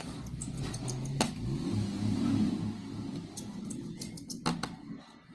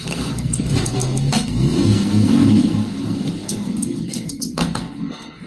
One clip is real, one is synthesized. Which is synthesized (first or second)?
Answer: second